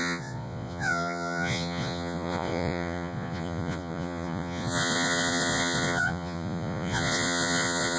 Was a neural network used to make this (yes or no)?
yes